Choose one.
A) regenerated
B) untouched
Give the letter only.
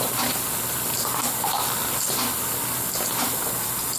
B